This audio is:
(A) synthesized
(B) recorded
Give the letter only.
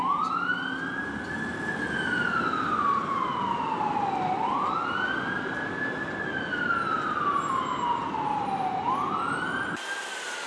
B